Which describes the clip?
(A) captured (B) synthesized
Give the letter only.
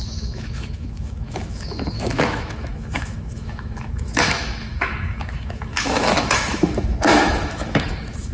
B